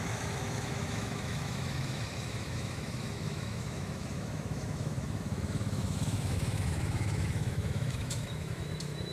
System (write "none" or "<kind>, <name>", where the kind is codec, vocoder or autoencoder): autoencoder, DAC-VAE